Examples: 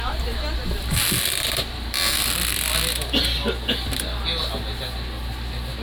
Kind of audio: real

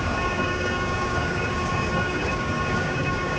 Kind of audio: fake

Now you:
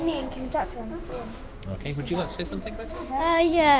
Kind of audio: fake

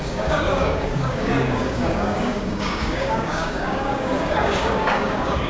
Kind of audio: fake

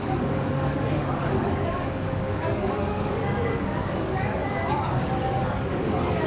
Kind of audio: fake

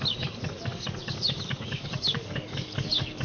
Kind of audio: fake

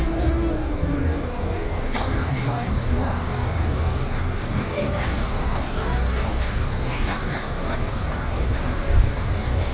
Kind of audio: fake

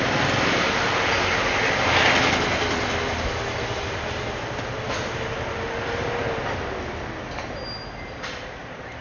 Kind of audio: real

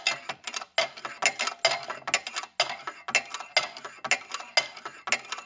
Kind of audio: real